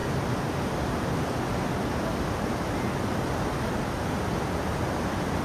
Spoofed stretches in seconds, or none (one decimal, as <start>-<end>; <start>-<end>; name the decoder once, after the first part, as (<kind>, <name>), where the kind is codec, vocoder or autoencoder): none